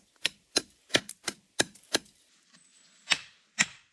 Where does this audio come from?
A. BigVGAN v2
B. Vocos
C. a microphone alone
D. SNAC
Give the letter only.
A